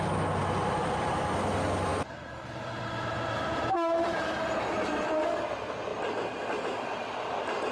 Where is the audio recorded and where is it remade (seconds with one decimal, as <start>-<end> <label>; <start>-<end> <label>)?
0.0-0.4 recorded; 0.4-1.1 remade; 1.1-7.7 recorded